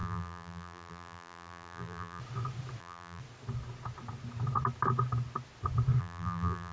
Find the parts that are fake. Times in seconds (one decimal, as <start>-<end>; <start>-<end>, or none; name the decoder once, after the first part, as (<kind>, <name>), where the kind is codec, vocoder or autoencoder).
0.0-2.2 (vocoder, BigVGAN v2); 2.8-3.2; 6.0-6.7

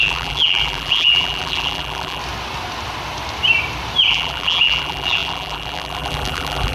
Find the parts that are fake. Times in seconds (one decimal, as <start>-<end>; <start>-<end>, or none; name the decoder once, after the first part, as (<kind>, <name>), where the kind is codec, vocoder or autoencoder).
0.0-2.2 (vocoder, BigVGAN v2); 4.1-6.7

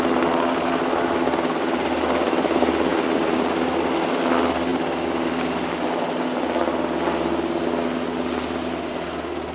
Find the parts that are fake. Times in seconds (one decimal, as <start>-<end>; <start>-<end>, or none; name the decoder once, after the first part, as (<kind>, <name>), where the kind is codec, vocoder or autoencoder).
2.9-3.5 (vocoder, BigVGAN v2)